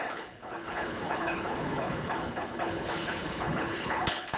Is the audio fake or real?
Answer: fake